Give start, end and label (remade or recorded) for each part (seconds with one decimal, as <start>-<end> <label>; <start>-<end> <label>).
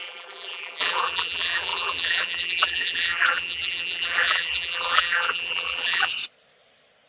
0.0-6.1 remade; 6.1-7.1 recorded